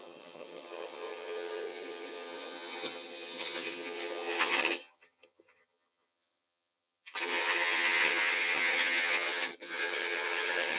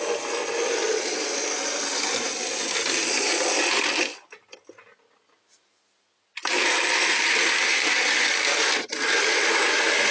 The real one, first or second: second